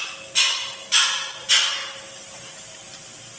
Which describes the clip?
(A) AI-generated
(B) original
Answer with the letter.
B